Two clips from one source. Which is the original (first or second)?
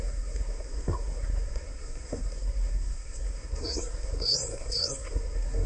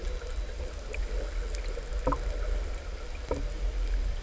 second